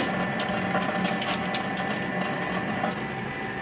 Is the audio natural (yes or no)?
yes